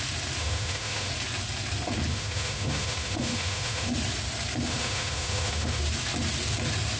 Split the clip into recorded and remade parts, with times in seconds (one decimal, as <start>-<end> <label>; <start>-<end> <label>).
0.0-0.4 recorded; 0.4-1.1 remade; 1.1-2.1 recorded; 2.1-3.9 remade; 3.9-4.7 recorded; 4.7-5.8 remade; 5.8-7.0 recorded